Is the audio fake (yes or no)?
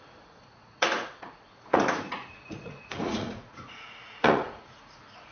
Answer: yes